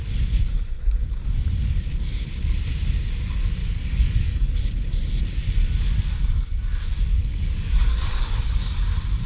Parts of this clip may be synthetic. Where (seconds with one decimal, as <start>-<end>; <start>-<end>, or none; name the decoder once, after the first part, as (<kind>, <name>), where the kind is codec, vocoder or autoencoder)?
3.6-4.6 (codec, DAC); 7.1-8.4